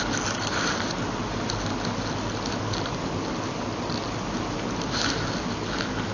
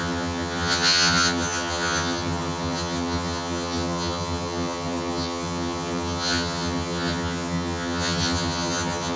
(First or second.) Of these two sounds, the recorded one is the first